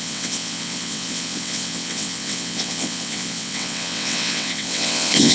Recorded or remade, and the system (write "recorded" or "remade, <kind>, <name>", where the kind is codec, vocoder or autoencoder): remade, vocoder, WaveNeXt